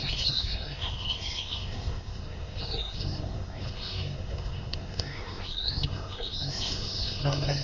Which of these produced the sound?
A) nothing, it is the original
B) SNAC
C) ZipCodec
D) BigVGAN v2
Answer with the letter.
B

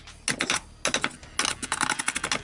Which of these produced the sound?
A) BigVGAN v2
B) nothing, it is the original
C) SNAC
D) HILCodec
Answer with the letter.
B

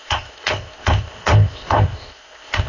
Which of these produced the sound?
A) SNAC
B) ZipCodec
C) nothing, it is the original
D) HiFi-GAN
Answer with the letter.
B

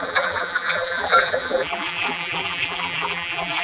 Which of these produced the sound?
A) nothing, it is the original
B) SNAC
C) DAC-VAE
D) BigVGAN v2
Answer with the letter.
D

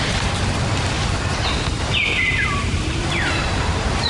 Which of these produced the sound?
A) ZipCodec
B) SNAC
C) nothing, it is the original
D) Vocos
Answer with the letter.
C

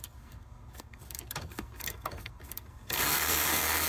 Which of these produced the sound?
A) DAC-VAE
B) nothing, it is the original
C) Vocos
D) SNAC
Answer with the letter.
D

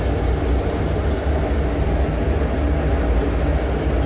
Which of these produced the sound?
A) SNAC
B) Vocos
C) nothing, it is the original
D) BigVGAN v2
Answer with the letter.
C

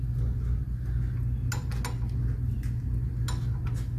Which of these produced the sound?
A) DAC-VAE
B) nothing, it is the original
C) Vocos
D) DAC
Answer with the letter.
B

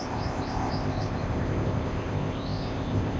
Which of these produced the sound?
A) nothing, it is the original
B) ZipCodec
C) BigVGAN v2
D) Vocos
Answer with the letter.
B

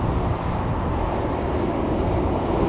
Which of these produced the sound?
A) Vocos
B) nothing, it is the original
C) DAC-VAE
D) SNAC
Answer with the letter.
B